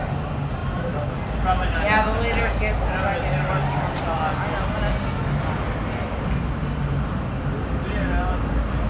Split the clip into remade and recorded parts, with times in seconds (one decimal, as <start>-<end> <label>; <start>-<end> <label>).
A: 0.0-8.9 recorded